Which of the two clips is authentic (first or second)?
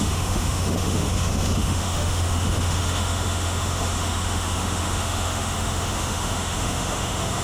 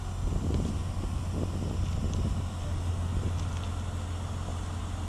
second